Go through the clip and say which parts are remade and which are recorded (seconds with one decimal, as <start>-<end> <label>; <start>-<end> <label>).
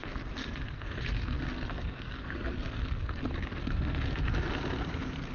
0.0-3.2 remade; 3.2-3.6 recorded; 3.6-4.2 remade; 4.2-5.3 recorded